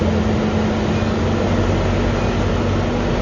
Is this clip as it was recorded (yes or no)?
yes